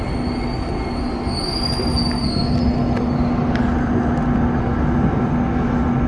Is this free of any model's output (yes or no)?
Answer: yes